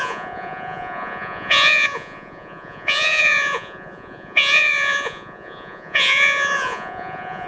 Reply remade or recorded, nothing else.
remade